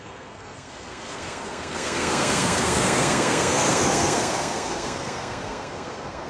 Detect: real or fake fake